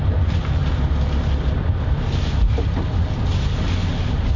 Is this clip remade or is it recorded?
recorded